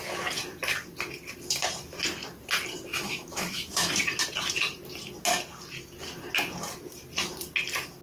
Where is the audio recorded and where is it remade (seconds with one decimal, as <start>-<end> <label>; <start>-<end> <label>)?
0.0-2.9 recorded; 2.9-3.9 remade; 3.9-8.0 recorded